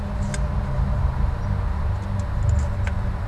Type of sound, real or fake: real